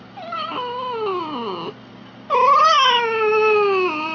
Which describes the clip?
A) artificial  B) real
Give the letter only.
B